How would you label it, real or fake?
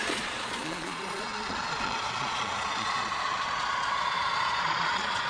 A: fake